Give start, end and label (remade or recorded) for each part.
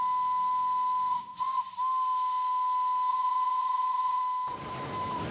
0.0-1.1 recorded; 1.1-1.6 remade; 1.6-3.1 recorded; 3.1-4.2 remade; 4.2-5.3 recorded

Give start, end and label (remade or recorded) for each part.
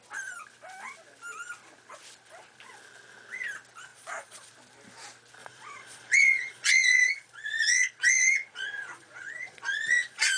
0.0-3.9 recorded; 3.9-4.5 remade; 4.5-5.4 recorded; 5.4-10.4 remade